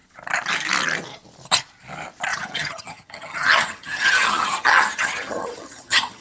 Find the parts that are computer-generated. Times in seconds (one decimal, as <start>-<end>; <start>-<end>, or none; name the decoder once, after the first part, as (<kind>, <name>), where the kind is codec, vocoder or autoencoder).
2.3-6.2 (vocoder, HiFi-GAN)